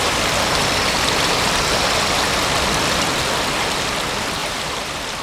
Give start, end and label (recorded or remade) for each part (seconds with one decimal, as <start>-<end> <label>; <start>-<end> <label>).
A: 0.0-4.4 recorded; 4.4-5.2 remade